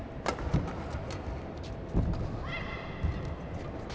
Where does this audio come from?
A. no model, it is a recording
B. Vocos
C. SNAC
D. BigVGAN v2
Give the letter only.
A